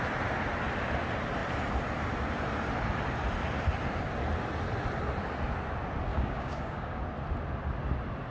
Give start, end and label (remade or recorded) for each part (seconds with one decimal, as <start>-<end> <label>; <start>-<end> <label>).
0.0-6.1 recorded; 6.1-7.0 remade; 7.0-8.3 recorded